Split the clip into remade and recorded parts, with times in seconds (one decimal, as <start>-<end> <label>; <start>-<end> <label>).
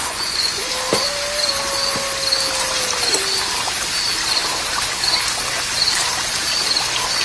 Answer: 0.0-0.7 remade; 0.7-7.2 recorded